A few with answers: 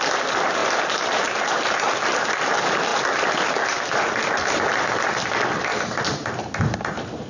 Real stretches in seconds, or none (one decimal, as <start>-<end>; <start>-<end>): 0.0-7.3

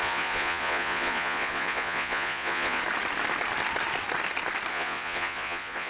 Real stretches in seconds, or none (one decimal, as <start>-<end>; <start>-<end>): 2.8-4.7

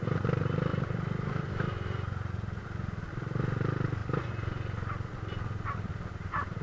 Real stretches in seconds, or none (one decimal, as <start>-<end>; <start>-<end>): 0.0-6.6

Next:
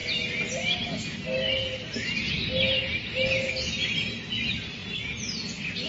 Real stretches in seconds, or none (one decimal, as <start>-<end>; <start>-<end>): 0.0-5.9